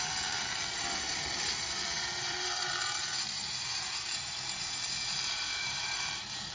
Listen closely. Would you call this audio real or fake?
fake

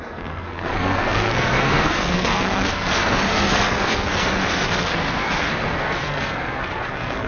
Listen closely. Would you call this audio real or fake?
fake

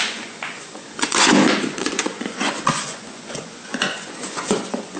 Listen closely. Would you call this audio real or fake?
fake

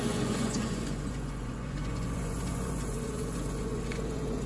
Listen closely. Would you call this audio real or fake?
fake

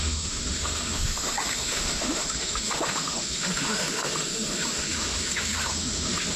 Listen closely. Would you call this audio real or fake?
fake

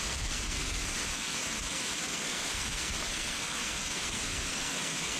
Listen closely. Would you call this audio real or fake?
fake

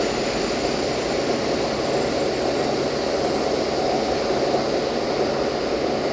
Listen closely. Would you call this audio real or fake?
real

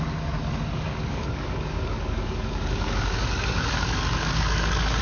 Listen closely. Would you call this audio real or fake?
fake